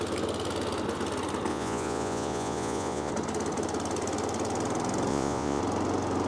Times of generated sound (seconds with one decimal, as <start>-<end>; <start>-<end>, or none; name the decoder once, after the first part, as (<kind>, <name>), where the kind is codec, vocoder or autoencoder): 1.5-3.1 (vocoder, Vocos); 5.1-5.6

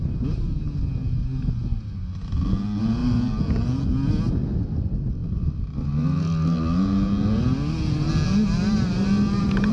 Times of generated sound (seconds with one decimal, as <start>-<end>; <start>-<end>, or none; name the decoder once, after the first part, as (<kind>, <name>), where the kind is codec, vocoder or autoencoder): none